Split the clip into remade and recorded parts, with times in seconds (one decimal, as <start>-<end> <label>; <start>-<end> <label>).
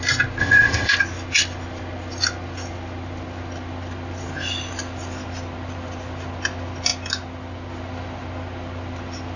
0.0-0.4 recorded; 0.4-0.9 remade; 0.9-9.4 recorded